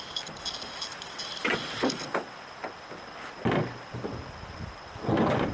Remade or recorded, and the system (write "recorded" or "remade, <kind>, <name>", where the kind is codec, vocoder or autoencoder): recorded